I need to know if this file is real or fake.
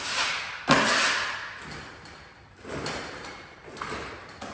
real